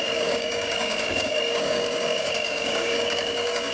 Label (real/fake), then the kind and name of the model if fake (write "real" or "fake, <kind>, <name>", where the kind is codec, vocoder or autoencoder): fake, codec, DAC